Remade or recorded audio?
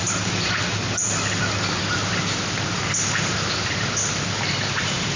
recorded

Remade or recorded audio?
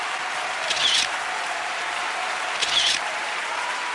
remade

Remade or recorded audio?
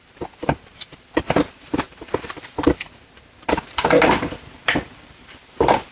remade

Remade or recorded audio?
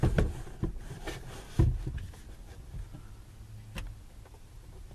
recorded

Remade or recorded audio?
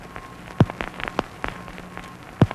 recorded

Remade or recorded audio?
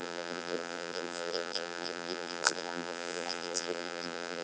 remade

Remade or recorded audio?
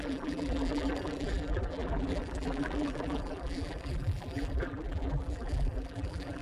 remade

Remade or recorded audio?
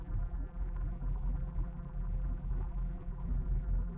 remade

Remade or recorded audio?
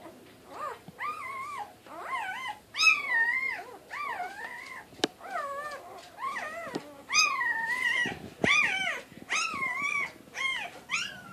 recorded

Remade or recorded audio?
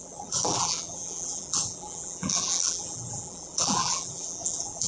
remade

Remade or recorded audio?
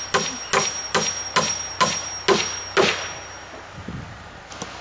recorded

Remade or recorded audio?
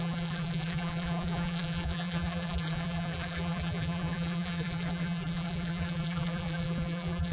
remade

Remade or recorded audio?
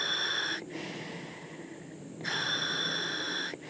recorded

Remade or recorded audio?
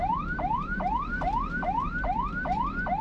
recorded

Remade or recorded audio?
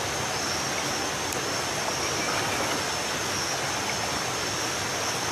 recorded